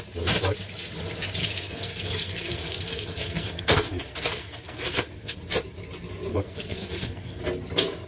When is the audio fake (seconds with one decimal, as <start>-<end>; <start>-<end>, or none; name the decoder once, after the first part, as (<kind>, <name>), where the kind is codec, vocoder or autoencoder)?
1.4-5.4 (codec, SNAC); 6.3-7.4